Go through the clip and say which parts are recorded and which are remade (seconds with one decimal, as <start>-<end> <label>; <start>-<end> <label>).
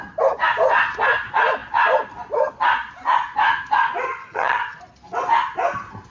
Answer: 0.0-4.1 recorded; 4.1-4.8 remade; 4.8-6.1 recorded